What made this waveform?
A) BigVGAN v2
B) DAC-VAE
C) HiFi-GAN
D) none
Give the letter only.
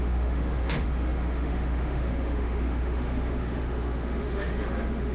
B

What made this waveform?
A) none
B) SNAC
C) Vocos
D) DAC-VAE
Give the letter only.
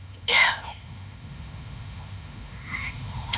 D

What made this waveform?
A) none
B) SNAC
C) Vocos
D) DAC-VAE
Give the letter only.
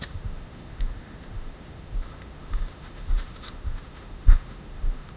D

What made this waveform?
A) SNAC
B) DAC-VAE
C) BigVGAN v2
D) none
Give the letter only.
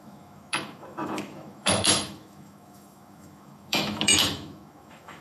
B